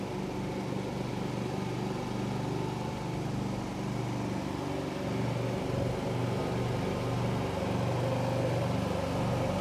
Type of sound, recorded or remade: recorded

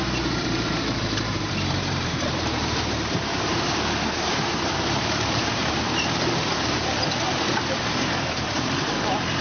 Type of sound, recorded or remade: remade